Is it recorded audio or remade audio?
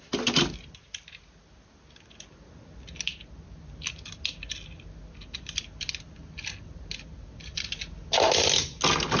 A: recorded